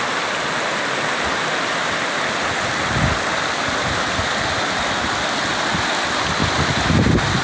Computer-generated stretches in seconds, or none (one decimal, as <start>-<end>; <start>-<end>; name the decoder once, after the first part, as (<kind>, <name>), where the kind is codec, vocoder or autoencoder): none